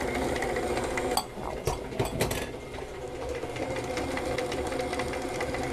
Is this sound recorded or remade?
recorded